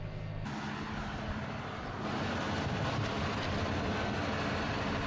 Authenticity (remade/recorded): recorded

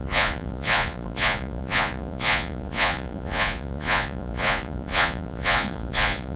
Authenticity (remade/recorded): remade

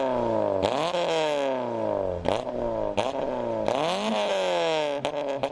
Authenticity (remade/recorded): recorded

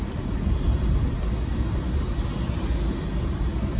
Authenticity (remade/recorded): recorded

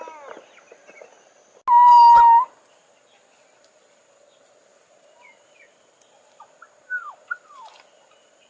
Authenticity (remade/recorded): recorded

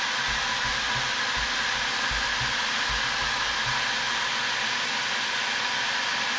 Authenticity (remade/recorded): recorded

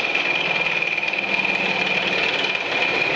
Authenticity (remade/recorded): recorded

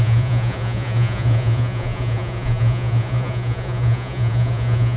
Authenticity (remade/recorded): remade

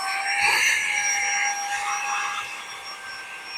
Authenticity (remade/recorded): recorded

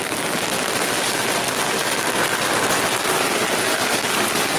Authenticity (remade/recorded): recorded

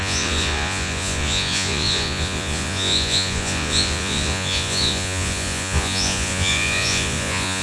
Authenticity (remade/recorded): remade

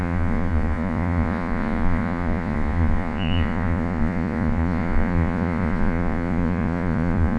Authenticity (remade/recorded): remade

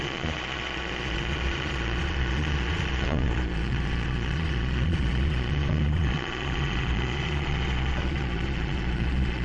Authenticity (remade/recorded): remade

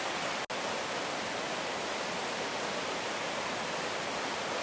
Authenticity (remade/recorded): recorded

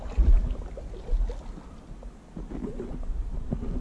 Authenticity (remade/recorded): recorded